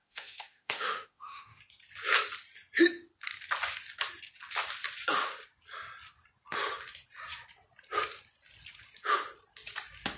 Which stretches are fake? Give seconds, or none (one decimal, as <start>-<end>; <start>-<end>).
0.0-1.6